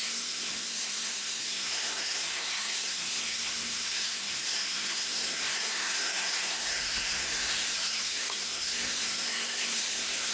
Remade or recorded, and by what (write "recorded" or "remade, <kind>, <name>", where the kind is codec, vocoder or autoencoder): remade, codec, SNAC